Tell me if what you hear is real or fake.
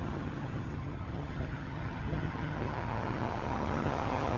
fake